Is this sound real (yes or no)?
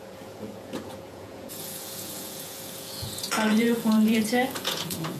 no